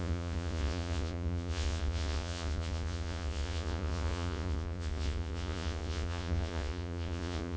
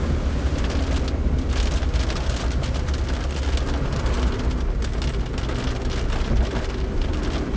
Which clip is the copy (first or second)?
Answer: first